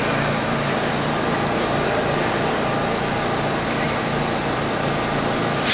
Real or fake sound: fake